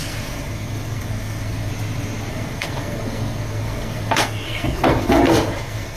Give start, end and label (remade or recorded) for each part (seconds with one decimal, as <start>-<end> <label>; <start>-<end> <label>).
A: 0.0-1.7 remade; 1.7-2.3 recorded; 2.3-6.0 remade